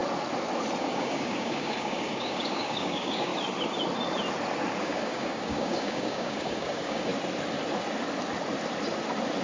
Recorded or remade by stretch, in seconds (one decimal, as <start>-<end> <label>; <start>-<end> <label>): 0.0-0.8 recorded; 0.8-3.3 remade; 3.3-4.8 recorded; 4.8-7.1 remade; 7.1-9.4 recorded

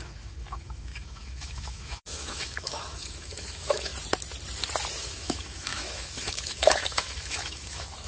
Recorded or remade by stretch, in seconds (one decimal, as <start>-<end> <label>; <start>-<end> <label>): 0.0-3.9 remade; 3.9-5.0 recorded; 5.0-8.1 remade

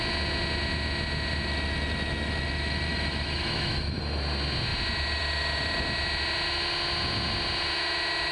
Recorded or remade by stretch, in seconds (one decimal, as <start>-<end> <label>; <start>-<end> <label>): 0.0-1.5 recorded; 1.5-4.2 remade; 4.2-8.3 recorded

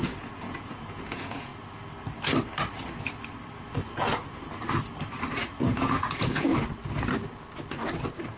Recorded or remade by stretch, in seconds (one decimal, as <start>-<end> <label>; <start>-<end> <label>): 0.0-1.5 remade; 1.5-5.6 recorded; 5.6-6.5 remade; 6.5-8.4 recorded

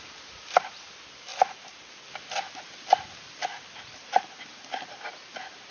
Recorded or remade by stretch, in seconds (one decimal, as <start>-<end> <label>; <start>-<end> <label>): 0.0-5.7 recorded

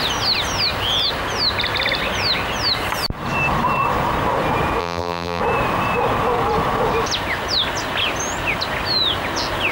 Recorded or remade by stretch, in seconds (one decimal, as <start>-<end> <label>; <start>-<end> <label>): 0.0-4.8 recorded; 4.8-5.4 remade; 5.4-9.7 recorded

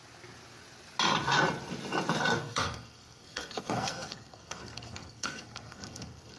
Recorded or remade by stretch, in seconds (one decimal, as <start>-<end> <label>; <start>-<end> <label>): 0.0-2.4 recorded; 2.4-6.4 remade

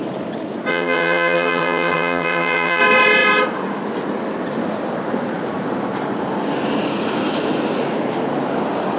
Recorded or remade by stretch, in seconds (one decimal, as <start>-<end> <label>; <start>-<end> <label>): 0.0-0.7 recorded; 0.7-2.8 remade; 2.8-9.0 recorded